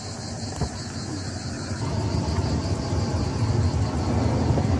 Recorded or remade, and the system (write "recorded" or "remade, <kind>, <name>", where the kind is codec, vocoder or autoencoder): recorded